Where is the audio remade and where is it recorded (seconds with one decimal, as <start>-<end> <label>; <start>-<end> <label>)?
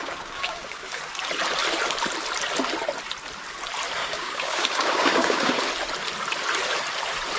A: 0.0-1.0 remade; 1.0-4.0 recorded; 4.0-5.6 remade; 5.6-7.4 recorded